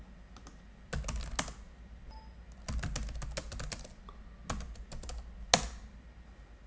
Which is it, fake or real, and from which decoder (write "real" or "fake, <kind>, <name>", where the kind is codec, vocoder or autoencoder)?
real